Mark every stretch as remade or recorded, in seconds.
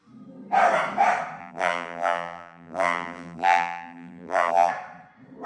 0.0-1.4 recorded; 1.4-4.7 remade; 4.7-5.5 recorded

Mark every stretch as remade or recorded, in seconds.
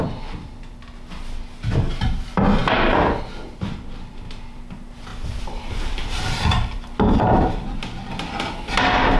0.0-5.1 recorded; 5.1-8.1 remade; 8.1-9.2 recorded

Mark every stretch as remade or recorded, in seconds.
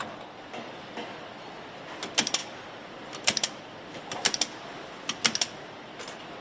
0.0-2.4 recorded; 2.4-4.0 remade; 4.0-6.4 recorded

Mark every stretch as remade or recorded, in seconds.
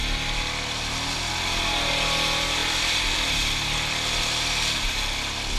0.0-2.6 recorded; 2.6-4.2 remade; 4.2-5.6 recorded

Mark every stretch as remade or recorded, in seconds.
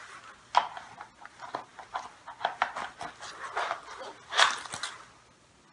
0.0-5.7 recorded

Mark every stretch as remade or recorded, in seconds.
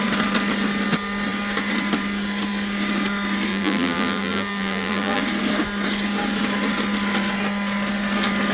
0.0-3.5 recorded; 3.5-5.2 remade; 5.2-8.5 recorded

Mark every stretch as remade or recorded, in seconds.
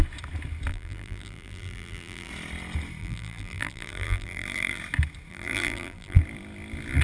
0.0-0.7 recorded; 0.7-2.3 remade; 2.3-3.0 recorded; 3.0-4.8 remade; 4.8-5.3 recorded; 5.3-6.2 remade; 6.2-7.0 recorded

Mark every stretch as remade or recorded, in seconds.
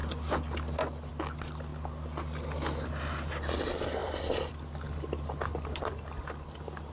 0.0-4.0 recorded; 4.0-4.5 remade; 4.5-6.9 recorded